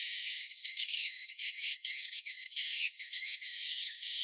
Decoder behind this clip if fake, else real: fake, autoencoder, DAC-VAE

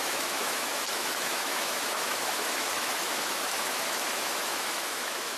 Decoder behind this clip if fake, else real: fake, autoencoder, DAC-VAE